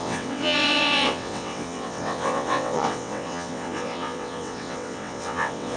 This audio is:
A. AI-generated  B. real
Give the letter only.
A